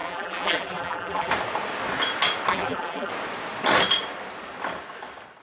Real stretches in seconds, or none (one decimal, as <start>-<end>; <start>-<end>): 1.3-2.5; 3.1-5.4